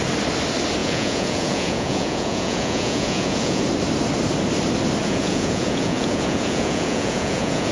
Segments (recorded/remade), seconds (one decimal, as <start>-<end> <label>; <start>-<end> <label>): 0.0-0.8 recorded; 0.8-3.6 remade; 3.6-5.0 recorded; 5.0-7.7 remade